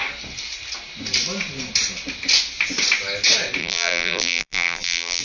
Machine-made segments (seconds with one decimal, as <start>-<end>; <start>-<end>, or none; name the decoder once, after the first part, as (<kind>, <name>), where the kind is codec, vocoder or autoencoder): 3.6-5.2 (vocoder, BigVGAN v2)